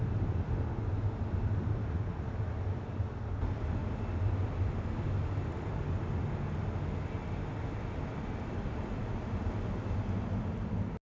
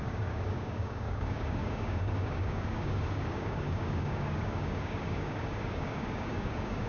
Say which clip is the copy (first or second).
second